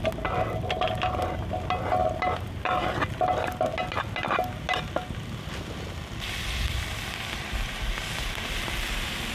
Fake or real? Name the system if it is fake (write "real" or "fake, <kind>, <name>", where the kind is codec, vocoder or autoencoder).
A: real